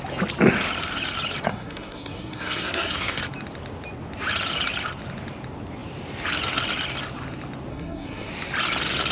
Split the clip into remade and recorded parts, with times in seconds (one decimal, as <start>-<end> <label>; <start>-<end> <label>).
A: 0.0-1.5 recorded; 1.5-3.2 remade; 3.2-7.7 recorded; 7.7-8.3 remade; 8.3-9.1 recorded